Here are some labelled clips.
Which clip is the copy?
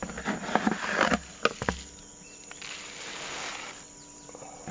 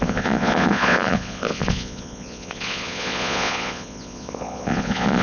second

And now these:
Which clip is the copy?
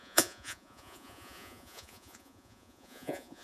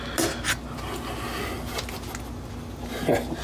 first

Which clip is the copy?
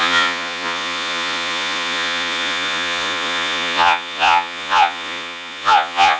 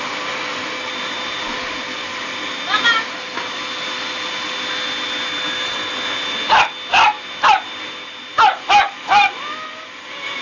first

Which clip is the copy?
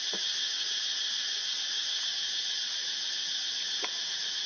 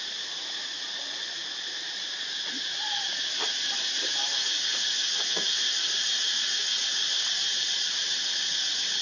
second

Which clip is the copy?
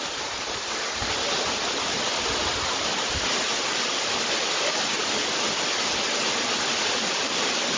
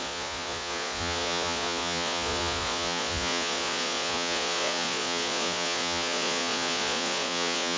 second